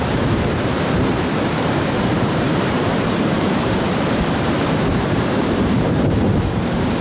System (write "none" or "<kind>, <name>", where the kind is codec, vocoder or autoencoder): vocoder, BigVGAN v2